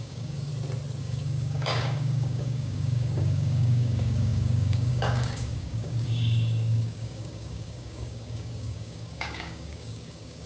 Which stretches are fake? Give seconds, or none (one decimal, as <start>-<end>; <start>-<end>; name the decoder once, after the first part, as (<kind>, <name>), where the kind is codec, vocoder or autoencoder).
0.0-0.5 (codec, DAC); 1.0-10.5